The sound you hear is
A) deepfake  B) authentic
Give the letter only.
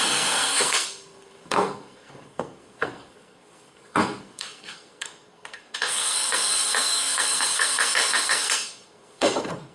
A